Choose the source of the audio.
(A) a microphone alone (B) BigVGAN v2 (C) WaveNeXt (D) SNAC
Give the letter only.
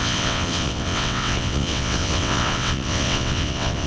C